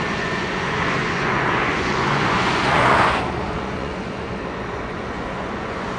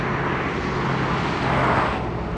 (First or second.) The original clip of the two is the second